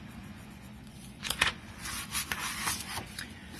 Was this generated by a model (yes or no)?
yes